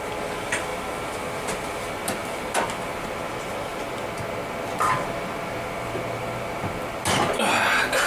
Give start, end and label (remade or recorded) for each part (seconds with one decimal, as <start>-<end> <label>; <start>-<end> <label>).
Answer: 0.0-8.1 recorded